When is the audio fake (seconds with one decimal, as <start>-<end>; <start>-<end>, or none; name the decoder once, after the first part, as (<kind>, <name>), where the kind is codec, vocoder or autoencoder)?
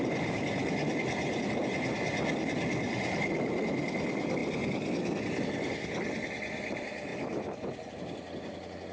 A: none